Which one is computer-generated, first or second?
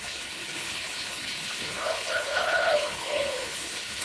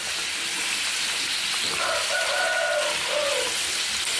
first